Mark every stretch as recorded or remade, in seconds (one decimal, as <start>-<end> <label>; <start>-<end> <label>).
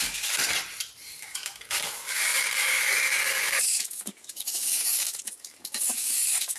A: 0.0-0.4 remade; 0.4-1.1 recorded; 1.1-6.6 remade